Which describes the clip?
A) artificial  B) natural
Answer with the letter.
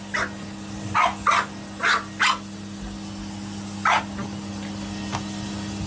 B